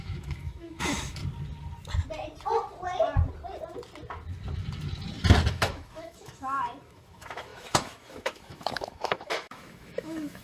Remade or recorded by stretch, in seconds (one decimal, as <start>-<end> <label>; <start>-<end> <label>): 0.0-1.2 remade; 1.2-5.5 recorded; 5.5-10.4 remade